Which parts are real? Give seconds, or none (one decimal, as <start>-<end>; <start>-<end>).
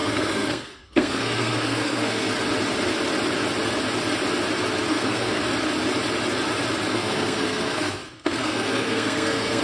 2.3-4.9; 5.4-6.9